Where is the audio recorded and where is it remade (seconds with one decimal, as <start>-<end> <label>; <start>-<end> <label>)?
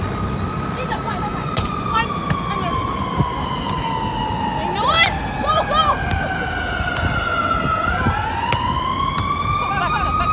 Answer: 0.0-1.3 recorded; 1.3-2.0 remade; 2.0-10.3 recorded